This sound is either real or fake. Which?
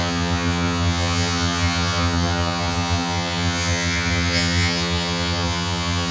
fake